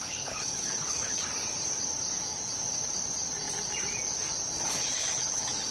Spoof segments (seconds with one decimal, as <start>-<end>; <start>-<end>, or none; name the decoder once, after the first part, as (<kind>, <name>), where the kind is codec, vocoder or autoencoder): 0.0-1.2 (codec, HILCodec); 4.6-5.7